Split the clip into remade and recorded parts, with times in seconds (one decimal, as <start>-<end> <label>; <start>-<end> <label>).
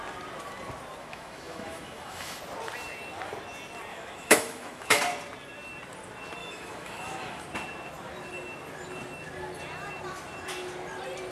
0.0-1.0 recorded; 1.0-2.4 remade; 2.4-3.9 recorded; 3.9-5.0 remade; 5.0-6.4 recorded; 6.4-7.4 remade; 7.4-11.3 recorded